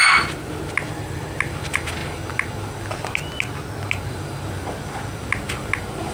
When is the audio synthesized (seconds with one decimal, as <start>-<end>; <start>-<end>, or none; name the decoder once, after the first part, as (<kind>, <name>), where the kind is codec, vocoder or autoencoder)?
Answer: none